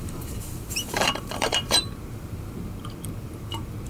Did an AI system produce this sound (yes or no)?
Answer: yes